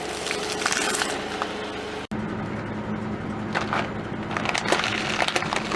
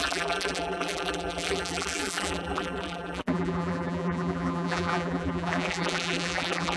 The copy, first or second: second